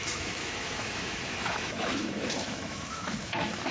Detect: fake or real fake